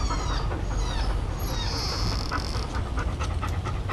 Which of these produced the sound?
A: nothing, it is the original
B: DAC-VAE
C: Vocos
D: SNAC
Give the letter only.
A